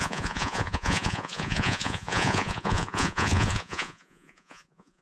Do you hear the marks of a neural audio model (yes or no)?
yes